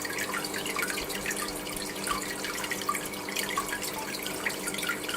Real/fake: real